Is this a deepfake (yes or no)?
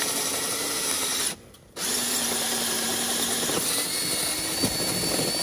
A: no